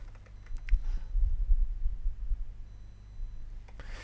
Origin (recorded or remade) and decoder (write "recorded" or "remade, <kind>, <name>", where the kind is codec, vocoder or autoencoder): recorded